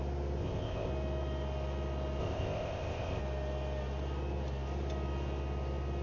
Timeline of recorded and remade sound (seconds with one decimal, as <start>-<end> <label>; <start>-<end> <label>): 0.0-0.4 recorded; 0.4-0.9 remade; 0.9-2.2 recorded; 2.2-3.2 remade; 3.2-6.0 recorded